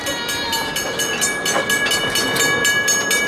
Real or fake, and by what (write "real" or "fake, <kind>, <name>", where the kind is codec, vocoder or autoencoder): real